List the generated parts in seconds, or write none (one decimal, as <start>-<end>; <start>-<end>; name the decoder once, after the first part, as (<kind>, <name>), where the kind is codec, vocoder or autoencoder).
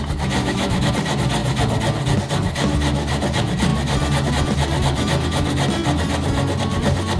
0.4-0.9 (autoencoder, DAC-VAE)